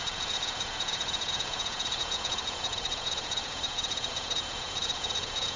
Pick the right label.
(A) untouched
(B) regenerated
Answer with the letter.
B